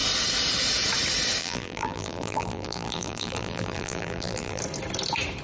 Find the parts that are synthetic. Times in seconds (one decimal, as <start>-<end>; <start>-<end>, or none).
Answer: 1.4-4.6